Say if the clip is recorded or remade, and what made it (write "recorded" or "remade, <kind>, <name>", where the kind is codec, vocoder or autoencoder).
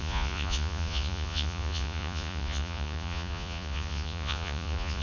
remade, vocoder, Vocos